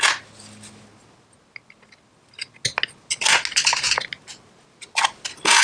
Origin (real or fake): real